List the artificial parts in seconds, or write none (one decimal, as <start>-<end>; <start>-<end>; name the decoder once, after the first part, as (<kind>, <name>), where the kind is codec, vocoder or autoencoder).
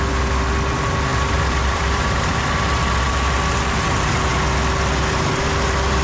1.1-2.0 (vocoder, BigVGAN v2)